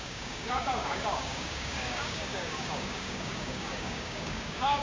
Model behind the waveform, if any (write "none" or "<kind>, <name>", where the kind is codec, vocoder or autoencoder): codec, DAC